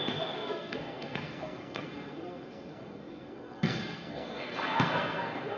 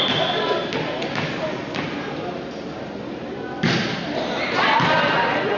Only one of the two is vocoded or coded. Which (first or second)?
first